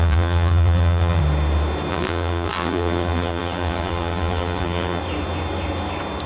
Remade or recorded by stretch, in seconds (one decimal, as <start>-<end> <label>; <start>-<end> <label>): 0.0-1.2 remade; 1.2-1.9 recorded; 1.9-5.0 remade; 5.0-6.3 recorded